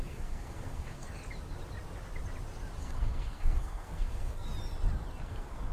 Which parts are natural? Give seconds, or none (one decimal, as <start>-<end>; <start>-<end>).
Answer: 1.2-2.8; 4.5-5.2